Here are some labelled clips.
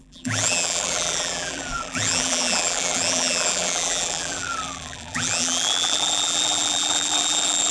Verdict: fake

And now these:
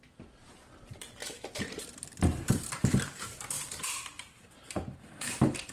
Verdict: fake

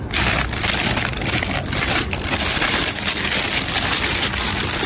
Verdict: real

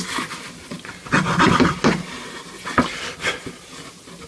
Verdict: real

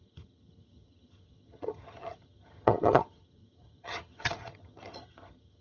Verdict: fake